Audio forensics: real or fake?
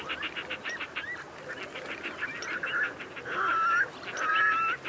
real